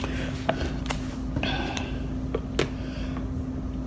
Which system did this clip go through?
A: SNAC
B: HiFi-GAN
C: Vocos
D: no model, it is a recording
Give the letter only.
D